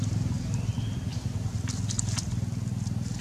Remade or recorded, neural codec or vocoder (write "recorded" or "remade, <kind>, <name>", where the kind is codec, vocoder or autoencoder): recorded